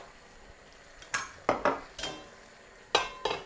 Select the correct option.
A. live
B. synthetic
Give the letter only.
A